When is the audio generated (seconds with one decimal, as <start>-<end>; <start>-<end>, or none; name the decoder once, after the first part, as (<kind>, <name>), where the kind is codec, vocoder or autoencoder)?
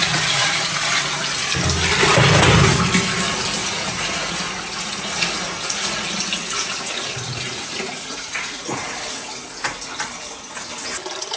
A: 0.0-0.9 (vocoder, Vocos); 3.6-6.1; 6.6-8.8